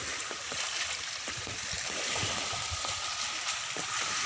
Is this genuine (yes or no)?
yes